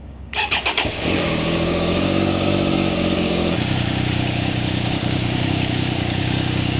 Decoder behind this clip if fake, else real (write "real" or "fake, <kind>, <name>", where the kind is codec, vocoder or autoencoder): fake, codec, DAC